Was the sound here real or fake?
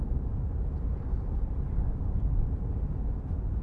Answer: real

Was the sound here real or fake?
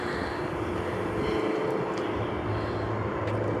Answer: real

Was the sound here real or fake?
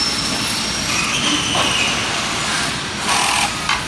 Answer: real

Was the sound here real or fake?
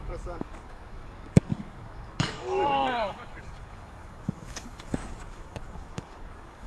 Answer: fake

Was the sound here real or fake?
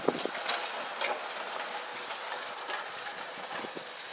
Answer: real